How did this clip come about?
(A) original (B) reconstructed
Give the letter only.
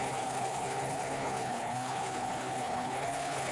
B